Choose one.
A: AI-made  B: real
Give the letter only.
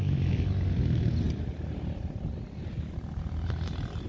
B